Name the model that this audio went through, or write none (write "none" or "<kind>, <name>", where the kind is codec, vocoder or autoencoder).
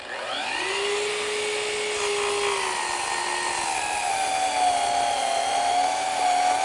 none